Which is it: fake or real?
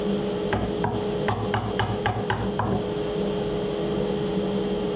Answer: real